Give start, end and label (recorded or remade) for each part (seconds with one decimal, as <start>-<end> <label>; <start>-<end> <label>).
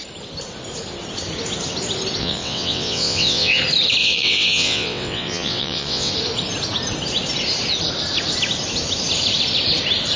0.0-2.2 recorded; 2.2-3.6 remade; 3.6-4.0 recorded; 4.0-6.1 remade; 6.1-10.2 recorded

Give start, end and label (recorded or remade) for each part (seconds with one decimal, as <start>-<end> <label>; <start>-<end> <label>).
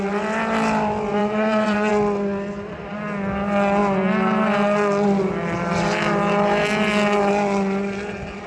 0.0-1.2 recorded; 1.2-1.9 remade; 1.9-8.5 recorded